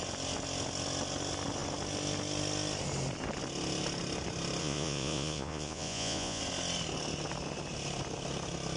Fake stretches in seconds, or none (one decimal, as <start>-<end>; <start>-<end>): 4.6-6.4